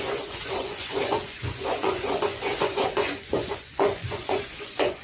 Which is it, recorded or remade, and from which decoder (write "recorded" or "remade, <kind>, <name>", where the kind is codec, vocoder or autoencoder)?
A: remade, vocoder, Vocos